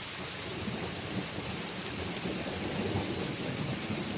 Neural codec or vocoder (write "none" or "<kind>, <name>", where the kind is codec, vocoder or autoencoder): none